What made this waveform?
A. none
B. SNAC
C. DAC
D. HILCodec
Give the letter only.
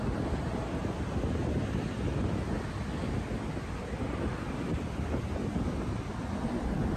A